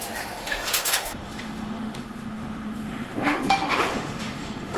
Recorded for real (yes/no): no